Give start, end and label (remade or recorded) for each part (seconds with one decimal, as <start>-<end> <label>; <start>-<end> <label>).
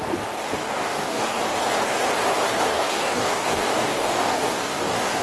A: 0.0-0.6 recorded; 0.6-1.2 remade; 1.2-2.7 recorded; 2.7-5.2 remade